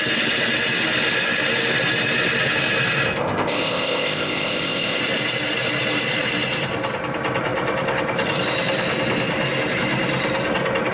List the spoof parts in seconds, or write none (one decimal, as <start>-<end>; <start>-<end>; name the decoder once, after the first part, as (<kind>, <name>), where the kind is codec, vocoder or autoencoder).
3.2-5.0 (codec, ZipCodec)